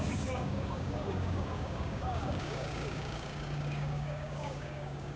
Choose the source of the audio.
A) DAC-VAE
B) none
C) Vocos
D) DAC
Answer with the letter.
D